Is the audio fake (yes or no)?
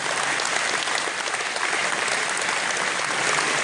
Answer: no